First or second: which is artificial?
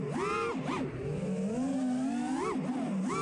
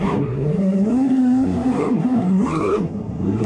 second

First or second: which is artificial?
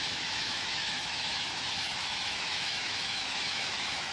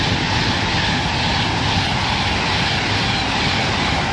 first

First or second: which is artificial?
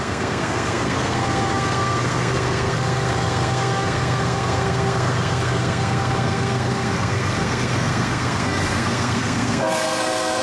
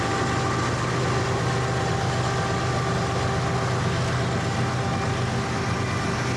first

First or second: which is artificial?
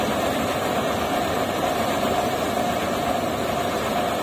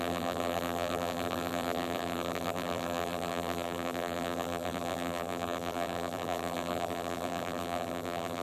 second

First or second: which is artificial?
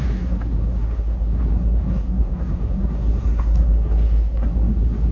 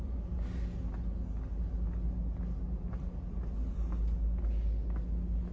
first